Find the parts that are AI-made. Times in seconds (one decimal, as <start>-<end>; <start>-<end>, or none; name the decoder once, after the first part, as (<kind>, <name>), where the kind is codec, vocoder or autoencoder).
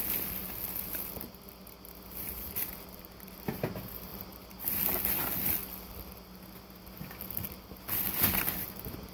none